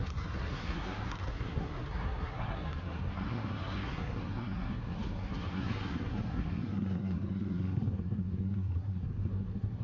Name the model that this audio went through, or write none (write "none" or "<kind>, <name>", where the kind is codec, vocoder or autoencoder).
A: codec, SNAC